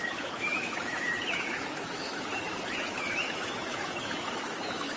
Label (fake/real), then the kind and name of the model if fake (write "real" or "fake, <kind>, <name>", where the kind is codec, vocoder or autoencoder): fake, autoencoder, DAC-VAE